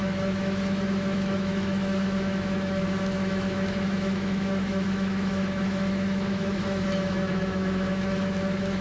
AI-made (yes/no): yes